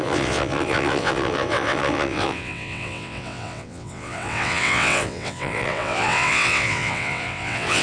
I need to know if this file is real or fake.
fake